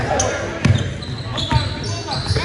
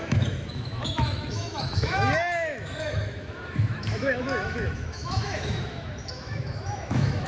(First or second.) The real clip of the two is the first